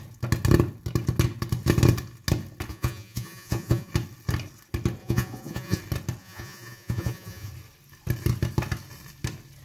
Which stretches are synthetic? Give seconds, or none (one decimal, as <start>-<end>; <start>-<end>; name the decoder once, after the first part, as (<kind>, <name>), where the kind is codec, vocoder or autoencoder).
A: 2.7-3.9 (vocoder, Vocos); 5.0-5.8; 6.2-7.5